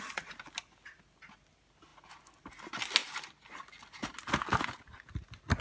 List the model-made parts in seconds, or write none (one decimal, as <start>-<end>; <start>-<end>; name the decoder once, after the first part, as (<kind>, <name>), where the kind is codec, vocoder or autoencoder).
none